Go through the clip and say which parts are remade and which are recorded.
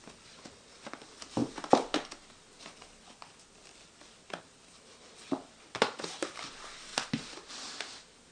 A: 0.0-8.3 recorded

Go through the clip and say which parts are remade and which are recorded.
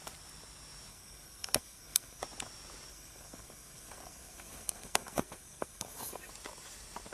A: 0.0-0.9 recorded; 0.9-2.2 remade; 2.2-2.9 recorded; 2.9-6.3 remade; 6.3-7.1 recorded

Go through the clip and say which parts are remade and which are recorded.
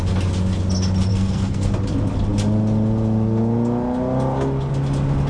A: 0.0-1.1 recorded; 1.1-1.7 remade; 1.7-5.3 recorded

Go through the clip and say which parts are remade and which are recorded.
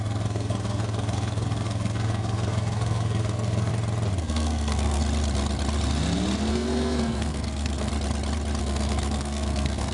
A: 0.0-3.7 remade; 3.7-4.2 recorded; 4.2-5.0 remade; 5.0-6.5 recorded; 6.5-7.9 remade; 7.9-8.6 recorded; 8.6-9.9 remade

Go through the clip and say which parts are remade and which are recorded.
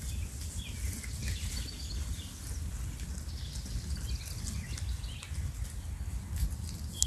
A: 0.0-7.1 recorded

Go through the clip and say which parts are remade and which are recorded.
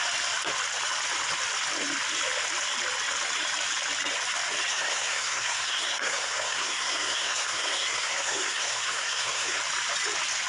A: 0.0-4.7 recorded; 4.7-9.6 remade; 9.6-10.5 recorded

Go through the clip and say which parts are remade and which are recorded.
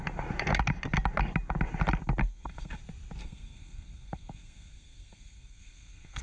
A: 0.0-2.2 recorded; 2.2-2.8 remade; 2.8-3.2 recorded; 3.2-6.2 remade